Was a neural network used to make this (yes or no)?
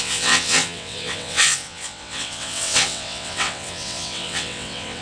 yes